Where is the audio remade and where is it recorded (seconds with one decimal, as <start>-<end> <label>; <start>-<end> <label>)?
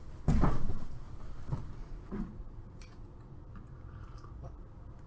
0.0-1.8 recorded; 1.8-3.3 remade; 3.3-5.1 recorded